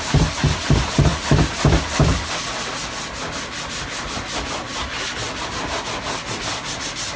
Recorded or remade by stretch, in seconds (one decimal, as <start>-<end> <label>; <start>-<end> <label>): 0.0-7.2 recorded